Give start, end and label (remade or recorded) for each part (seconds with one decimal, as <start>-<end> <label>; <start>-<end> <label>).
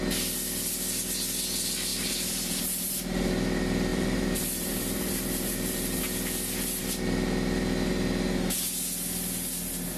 0.0-1.9 recorded; 1.9-3.3 remade; 3.3-3.9 recorded; 3.9-6.0 remade; 6.0-10.0 recorded